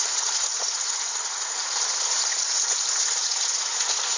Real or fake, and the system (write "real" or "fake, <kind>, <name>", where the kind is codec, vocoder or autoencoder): fake, vocoder, Vocos